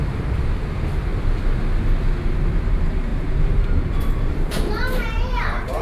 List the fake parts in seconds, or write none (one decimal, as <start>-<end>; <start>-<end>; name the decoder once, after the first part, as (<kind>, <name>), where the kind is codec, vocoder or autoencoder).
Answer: 0.0-1.1 (vocoder, BigVGAN v2); 2.6-5.8